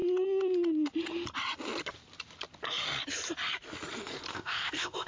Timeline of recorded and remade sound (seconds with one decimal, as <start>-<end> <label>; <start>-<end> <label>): 0.0-4.3 recorded; 4.3-5.1 remade